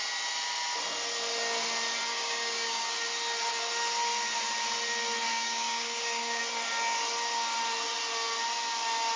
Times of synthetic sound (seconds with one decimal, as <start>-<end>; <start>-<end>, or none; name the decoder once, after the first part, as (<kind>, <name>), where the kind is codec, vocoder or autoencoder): 2.1-2.9 (codec, DAC); 5.3-6.4